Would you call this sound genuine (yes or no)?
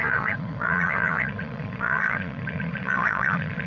no